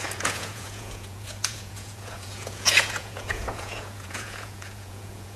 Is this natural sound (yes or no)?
no